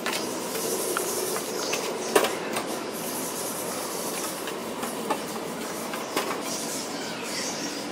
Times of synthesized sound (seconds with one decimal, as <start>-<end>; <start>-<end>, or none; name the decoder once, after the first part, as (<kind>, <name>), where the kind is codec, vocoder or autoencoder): 0.0-7.9 (vocoder, BigVGAN v2)